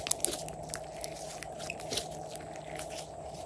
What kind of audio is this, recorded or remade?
recorded